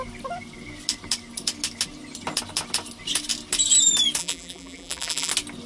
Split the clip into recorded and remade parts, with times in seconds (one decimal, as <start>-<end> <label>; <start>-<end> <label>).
0.0-4.2 recorded; 4.2-5.3 remade; 5.3-5.7 recorded